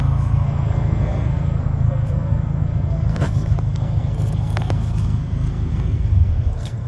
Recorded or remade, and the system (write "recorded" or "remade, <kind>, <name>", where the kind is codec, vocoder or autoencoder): remade, codec, SNAC